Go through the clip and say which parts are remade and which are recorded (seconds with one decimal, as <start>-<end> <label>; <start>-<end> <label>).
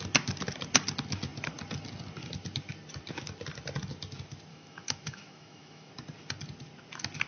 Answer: 0.0-4.5 recorded; 4.5-5.9 remade; 5.9-7.3 recorded